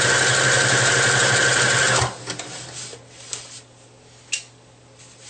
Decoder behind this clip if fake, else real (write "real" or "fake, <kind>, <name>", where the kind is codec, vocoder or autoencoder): real